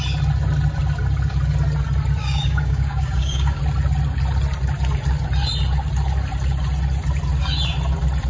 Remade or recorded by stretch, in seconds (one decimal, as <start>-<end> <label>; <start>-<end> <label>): 0.0-2.2 recorded; 2.2-3.6 remade; 3.6-8.3 recorded